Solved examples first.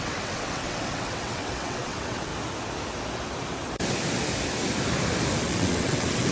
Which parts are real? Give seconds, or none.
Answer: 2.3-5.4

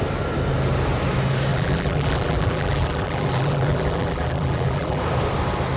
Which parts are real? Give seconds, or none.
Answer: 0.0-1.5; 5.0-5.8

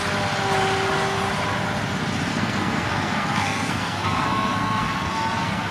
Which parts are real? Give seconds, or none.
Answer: 0.0-2.3

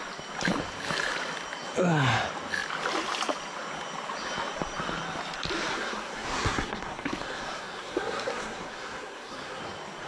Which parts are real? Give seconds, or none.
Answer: 0.0-5.7; 9.6-10.1

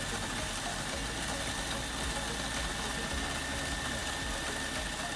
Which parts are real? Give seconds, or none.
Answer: 0.0-5.2

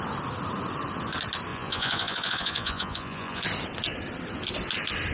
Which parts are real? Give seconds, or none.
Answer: 0.0-1.5; 3.4-5.1

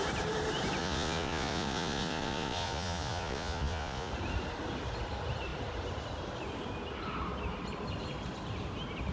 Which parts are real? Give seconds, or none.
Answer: 0.0-0.8; 4.1-9.1

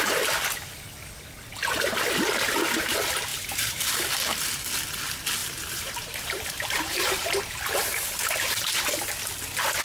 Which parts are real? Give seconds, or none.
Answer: 0.0-3.3; 3.9-5.4; 8.8-9.8